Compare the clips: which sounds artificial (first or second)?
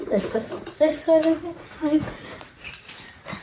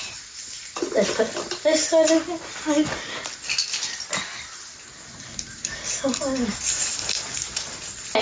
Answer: first